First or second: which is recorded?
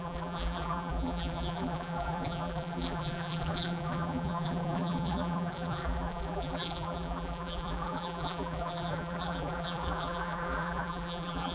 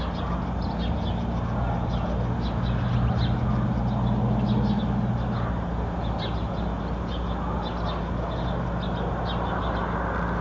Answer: second